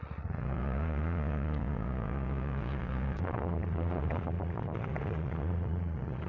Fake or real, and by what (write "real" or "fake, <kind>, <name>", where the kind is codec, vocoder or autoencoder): fake, vocoder, Vocos